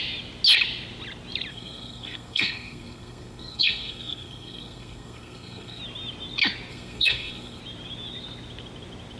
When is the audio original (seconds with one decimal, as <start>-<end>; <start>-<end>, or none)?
0.0-1.5; 5.8-6.7; 7.6-9.2